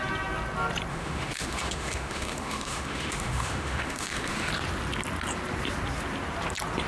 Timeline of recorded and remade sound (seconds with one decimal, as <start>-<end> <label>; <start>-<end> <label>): 0.0-0.9 recorded; 0.9-4.5 remade; 4.5-6.9 recorded